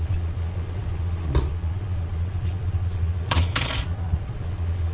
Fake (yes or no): yes